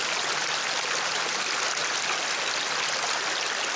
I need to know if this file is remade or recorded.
recorded